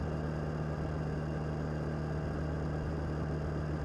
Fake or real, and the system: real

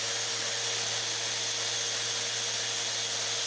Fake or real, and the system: real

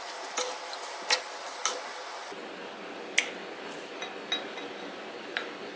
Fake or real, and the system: real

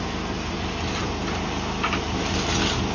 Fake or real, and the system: fake, vocoder, BigVGAN v2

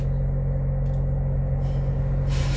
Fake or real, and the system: real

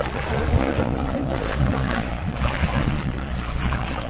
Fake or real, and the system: fake, vocoder, Vocos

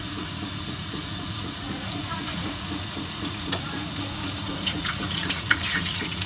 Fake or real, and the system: fake, vocoder, Vocos